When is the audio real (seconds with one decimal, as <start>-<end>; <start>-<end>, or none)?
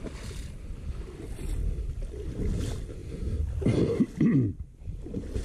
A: 0.0-5.4